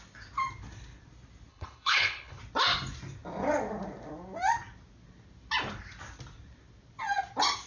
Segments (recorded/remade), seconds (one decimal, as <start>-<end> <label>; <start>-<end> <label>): 0.0-1.5 recorded; 1.5-2.4 remade; 2.4-7.7 recorded

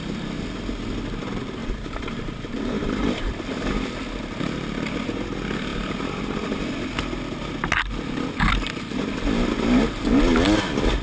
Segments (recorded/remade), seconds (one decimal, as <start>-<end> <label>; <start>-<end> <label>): 0.0-1.6 recorded; 1.6-3.3 remade; 3.3-11.0 recorded

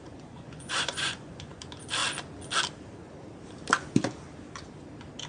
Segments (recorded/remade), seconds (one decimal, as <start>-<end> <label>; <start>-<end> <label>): 0.0-1.6 remade; 1.6-5.3 recorded

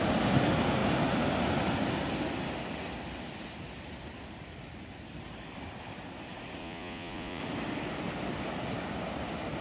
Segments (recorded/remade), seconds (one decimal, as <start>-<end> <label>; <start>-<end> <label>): 0.0-6.6 recorded; 6.6-7.4 remade; 7.4-9.6 recorded

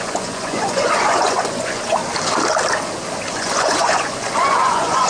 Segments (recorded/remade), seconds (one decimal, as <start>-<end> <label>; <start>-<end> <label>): 0.0-2.0 remade; 2.0-3.3 recorded; 3.3-5.1 remade

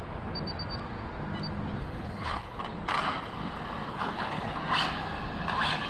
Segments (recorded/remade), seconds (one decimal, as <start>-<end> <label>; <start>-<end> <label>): 0.0-1.8 recorded; 1.8-2.6 remade; 2.6-3.9 recorded; 3.9-4.6 remade; 4.6-5.9 recorded

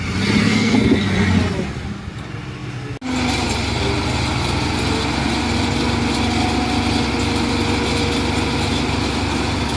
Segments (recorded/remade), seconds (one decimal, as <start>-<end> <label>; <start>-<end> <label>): 0.0-0.4 recorded; 0.4-1.0 remade; 1.0-9.8 recorded

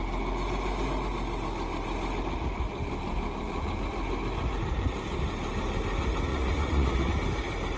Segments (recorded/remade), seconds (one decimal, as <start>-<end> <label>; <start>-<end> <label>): 0.0-6.3 recorded; 6.3-7.1 remade; 7.1-7.8 recorded